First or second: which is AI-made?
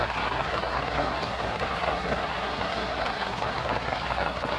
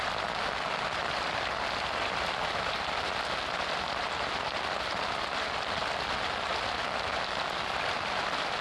first